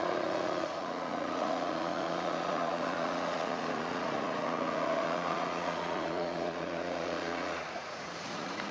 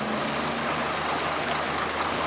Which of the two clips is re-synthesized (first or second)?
first